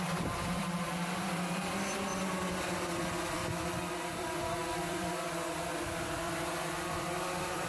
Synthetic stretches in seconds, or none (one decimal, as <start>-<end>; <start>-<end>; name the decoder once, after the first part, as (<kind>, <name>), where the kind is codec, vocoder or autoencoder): 0.0-2.1 (vocoder, BigVGAN v2); 3.0-3.4; 3.9-7.7